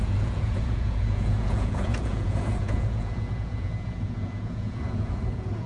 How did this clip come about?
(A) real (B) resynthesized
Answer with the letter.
B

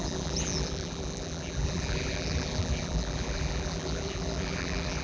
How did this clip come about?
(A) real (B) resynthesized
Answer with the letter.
B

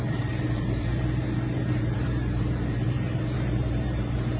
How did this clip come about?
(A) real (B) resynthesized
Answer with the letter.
B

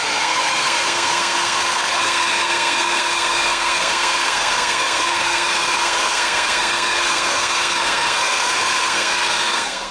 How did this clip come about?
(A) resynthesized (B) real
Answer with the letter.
A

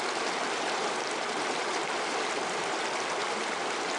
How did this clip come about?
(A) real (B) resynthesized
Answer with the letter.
A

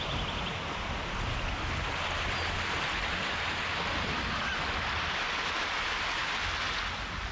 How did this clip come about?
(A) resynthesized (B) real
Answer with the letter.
B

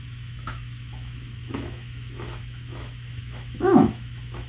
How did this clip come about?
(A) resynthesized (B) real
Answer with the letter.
A